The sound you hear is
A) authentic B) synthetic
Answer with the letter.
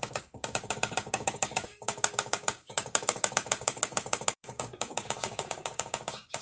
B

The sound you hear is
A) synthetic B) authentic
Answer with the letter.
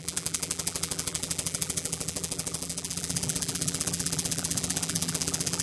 A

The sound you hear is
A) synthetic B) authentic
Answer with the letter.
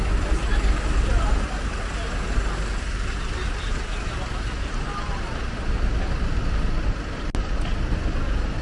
B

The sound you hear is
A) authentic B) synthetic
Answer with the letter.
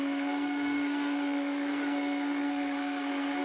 B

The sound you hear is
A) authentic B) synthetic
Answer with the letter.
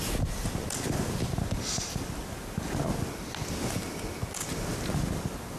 A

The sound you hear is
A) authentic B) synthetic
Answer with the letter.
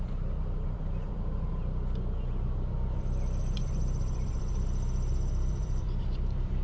B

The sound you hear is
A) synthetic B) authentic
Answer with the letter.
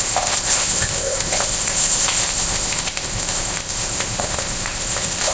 A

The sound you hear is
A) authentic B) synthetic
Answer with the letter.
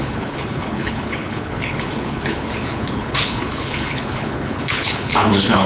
B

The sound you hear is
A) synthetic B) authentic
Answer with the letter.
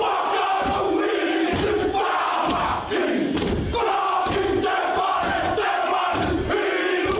A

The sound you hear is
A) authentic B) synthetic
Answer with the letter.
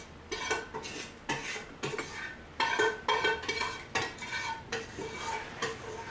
A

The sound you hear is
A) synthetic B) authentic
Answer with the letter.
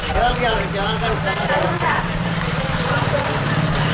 A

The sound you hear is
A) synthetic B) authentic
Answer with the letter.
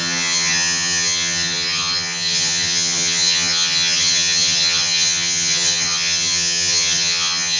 A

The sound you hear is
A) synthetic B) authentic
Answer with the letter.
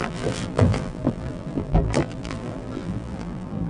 A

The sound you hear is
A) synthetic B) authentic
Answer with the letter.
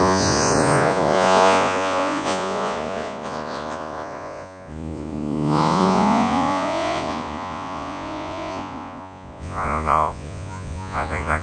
A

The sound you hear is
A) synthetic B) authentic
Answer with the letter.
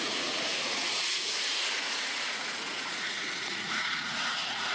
A